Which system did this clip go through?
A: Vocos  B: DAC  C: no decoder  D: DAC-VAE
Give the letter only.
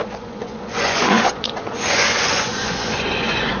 A